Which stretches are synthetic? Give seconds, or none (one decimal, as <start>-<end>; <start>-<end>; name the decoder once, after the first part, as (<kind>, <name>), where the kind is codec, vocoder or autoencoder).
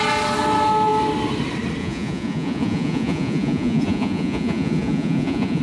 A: 1.8-5.6 (vocoder, Vocos)